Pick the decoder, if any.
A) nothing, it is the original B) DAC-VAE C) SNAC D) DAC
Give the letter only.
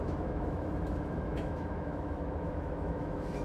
B